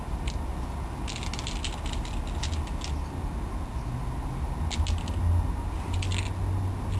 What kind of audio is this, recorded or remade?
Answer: recorded